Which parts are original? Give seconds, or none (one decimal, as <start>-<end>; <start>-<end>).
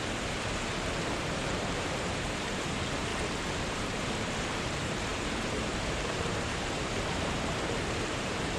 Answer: 3.1-3.7